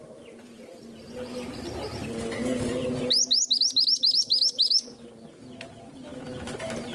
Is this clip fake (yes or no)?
no